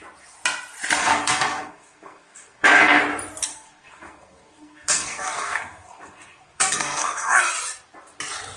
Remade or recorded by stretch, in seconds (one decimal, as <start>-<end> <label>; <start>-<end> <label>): 0.0-1.0 recorded; 1.0-3.0 remade; 3.0-3.5 recorded; 3.5-7.4 remade; 7.4-8.6 recorded

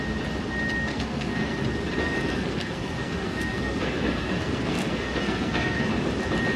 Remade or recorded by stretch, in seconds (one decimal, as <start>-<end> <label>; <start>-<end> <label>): 0.0-0.9 recorded; 0.9-1.6 remade; 1.6-2.0 recorded; 2.0-5.9 remade; 5.9-6.6 recorded

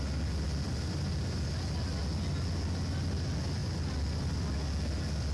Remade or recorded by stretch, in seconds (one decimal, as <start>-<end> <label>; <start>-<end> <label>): 0.0-5.3 recorded